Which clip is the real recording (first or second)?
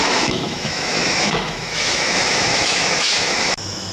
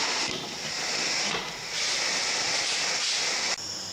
second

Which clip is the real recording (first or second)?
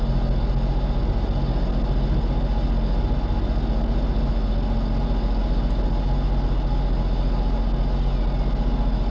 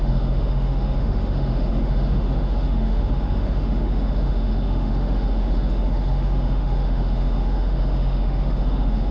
first